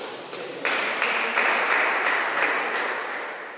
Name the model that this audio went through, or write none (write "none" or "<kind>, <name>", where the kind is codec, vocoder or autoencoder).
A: none